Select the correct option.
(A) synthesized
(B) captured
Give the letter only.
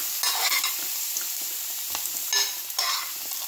B